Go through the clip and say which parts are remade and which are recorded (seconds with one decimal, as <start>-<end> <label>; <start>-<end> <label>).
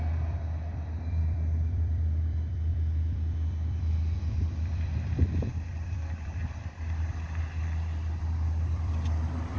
0.0-6.4 remade; 6.4-8.2 recorded; 8.2-9.6 remade